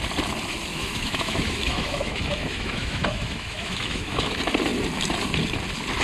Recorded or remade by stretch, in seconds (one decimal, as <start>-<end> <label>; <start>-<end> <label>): 0.0-0.7 recorded; 0.7-4.3 remade; 4.3-6.0 recorded